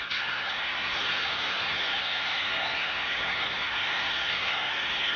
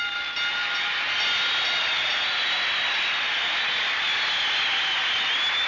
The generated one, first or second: first